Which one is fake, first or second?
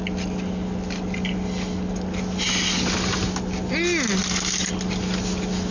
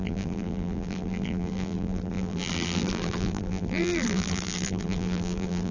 second